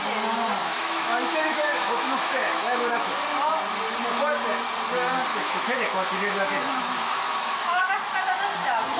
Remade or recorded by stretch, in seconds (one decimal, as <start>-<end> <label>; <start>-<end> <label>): 0.0-0.6 recorded; 0.6-3.1 remade; 3.1-5.3 recorded; 5.3-7.9 remade; 7.9-9.0 recorded